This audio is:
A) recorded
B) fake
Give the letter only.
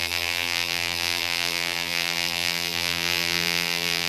B